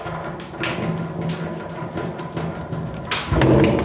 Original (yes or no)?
yes